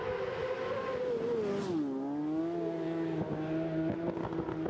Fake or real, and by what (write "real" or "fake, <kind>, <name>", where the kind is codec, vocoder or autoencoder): real